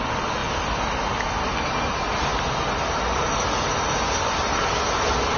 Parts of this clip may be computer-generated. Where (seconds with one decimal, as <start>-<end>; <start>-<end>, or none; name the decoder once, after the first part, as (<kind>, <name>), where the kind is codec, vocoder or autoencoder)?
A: none